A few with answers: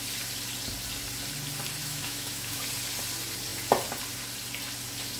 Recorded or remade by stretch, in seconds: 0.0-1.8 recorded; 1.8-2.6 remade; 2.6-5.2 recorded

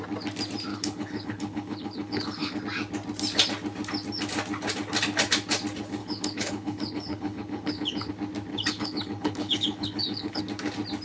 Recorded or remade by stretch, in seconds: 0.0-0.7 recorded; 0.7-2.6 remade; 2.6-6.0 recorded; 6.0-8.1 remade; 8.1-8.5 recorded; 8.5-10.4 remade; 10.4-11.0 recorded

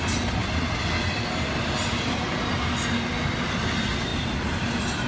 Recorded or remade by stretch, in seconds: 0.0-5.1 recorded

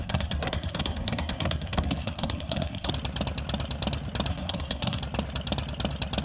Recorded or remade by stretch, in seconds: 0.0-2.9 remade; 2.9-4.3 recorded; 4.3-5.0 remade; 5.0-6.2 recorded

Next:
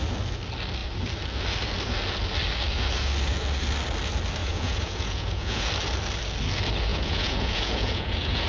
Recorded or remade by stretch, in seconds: 0.0-4.4 recorded; 4.4-5.7 remade; 5.7-6.9 recorded; 6.9-8.5 remade